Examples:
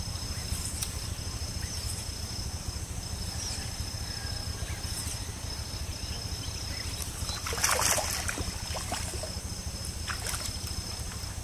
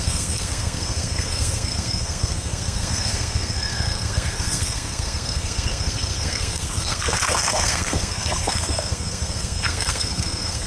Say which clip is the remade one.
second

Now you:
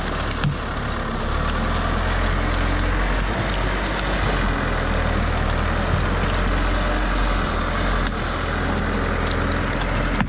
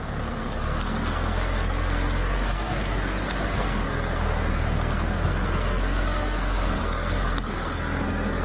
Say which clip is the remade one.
second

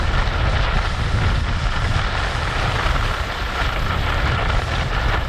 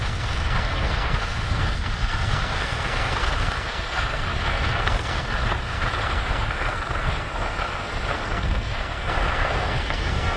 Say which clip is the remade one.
second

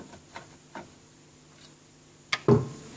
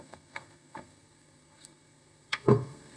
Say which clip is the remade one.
second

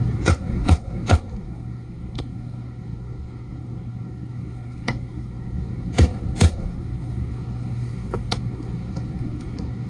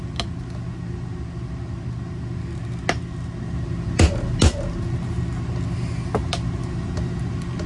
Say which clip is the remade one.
first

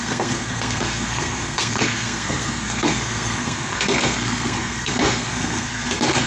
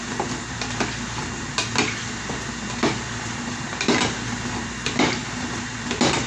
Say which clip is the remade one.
first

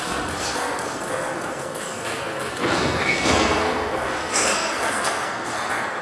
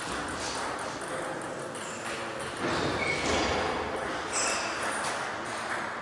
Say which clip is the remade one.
first